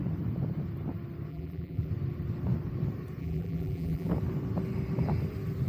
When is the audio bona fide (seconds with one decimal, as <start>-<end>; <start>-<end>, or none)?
0.0-1.3; 1.9-3.2; 4.1-5.7